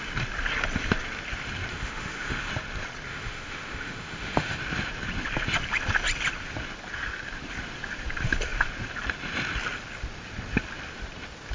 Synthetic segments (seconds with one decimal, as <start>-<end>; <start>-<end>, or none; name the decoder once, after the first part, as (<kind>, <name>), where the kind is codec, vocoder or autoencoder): 1.7-2.5 (autoencoder, DAC-VAE); 3.1-4.6